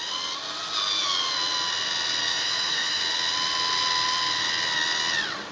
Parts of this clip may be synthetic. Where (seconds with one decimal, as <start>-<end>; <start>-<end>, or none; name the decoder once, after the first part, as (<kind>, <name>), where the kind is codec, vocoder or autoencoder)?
2.3-3.0 (autoencoder, DAC-VAE)